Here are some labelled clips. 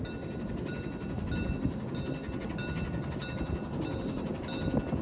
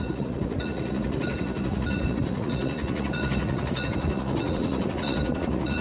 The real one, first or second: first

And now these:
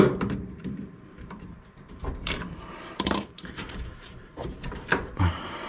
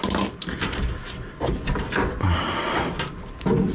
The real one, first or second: second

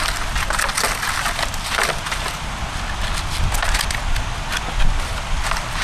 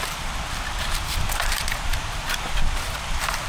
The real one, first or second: first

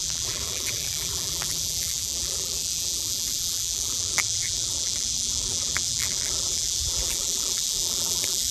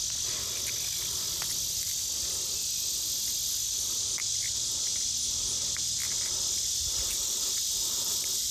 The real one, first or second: second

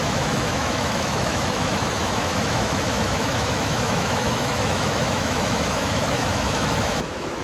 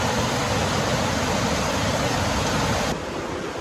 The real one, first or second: second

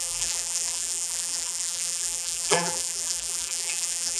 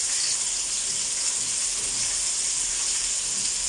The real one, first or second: second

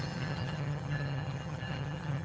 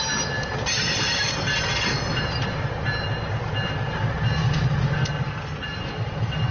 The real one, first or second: second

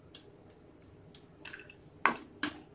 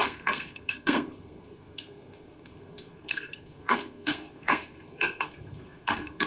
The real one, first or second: first